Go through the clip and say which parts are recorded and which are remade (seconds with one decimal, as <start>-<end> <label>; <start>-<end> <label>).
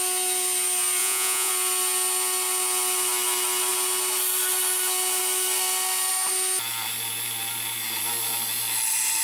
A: 0.0-1.0 recorded; 1.0-1.5 remade; 1.5-9.2 recorded